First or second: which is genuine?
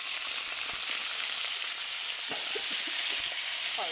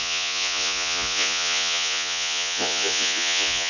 first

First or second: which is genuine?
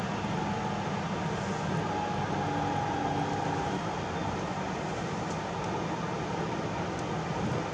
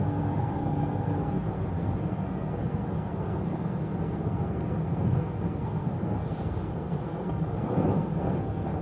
first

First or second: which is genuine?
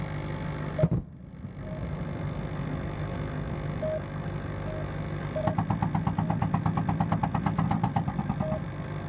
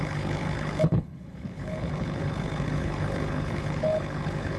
first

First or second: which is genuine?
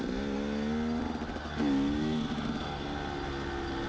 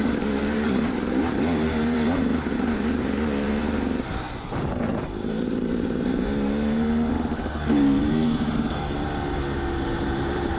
first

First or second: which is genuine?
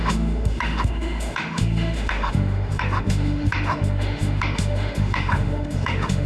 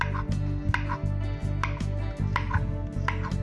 second